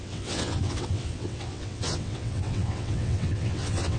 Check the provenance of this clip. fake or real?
fake